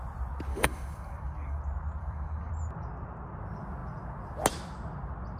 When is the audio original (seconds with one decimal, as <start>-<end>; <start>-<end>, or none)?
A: 0.0-0.5; 1.6-2.0; 2.5-5.4